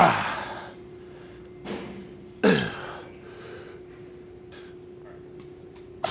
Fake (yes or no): no